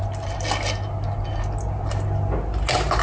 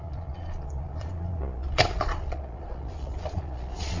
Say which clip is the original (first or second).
first